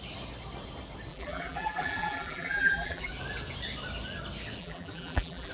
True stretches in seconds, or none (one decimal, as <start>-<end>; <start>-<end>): 0.0-1.1; 3.1-4.6